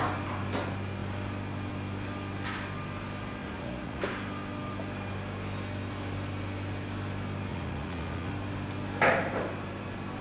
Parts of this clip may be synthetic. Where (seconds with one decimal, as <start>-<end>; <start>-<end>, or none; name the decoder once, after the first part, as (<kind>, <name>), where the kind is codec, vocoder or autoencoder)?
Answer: 3.4-4.0 (vocoder, Vocos); 7.5-8.3